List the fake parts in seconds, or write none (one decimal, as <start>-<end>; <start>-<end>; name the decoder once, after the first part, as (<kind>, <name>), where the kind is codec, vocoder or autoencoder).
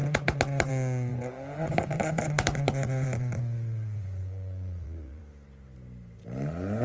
0.0-0.7 (vocoder, Vocos); 1.1-5.2